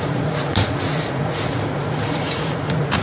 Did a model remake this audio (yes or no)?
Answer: yes